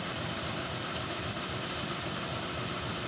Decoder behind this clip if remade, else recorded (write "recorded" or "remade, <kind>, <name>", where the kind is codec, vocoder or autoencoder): recorded